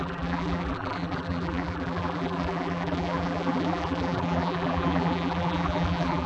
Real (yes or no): no